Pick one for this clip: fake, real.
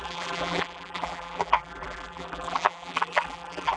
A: fake